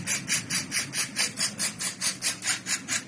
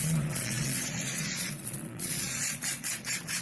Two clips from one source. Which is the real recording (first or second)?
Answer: first